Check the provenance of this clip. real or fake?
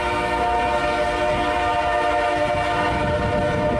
real